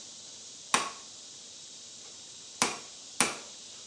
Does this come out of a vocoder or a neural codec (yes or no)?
no